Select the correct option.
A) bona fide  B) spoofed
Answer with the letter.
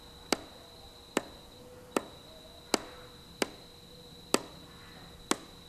A